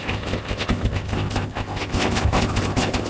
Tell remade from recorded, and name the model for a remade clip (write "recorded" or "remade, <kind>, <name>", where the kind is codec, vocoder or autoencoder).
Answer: remade, codec, ZipCodec